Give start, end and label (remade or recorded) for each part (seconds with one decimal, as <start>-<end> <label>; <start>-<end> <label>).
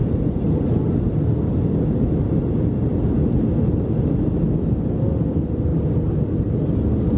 0.0-7.2 recorded